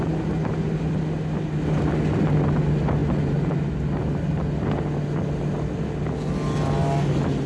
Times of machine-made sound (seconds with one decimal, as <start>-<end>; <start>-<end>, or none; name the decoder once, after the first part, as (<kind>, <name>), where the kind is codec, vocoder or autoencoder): none